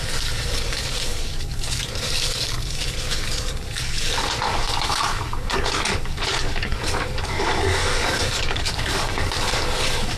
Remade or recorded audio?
remade